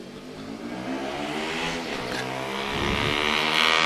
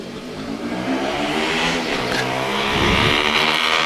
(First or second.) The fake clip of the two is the second